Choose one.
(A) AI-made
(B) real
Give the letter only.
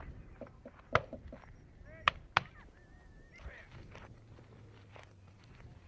B